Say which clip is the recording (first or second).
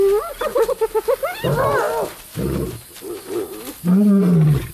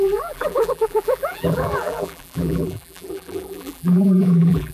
first